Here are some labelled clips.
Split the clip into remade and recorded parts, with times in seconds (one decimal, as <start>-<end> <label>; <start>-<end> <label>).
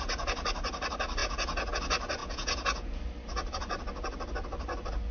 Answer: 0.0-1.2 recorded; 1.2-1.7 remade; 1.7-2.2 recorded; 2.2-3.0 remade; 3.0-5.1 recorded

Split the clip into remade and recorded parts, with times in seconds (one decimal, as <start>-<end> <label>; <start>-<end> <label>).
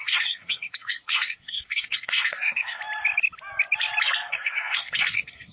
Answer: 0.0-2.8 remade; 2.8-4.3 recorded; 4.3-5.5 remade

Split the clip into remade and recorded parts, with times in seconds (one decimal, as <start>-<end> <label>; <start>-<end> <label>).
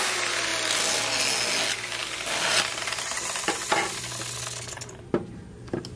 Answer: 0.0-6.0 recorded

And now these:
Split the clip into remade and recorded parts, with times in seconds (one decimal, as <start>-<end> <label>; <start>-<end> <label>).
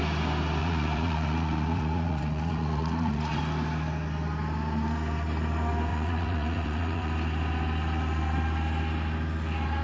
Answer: 0.0-0.6 recorded; 0.6-3.4 remade; 3.4-5.9 recorded; 5.9-7.1 remade; 7.1-9.8 recorded